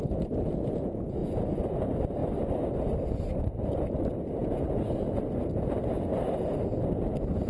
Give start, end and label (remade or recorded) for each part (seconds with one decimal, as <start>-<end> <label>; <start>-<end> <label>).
0.0-1.2 recorded; 1.2-1.8 remade; 1.8-4.4 recorded; 4.4-5.3 remade; 5.3-7.5 recorded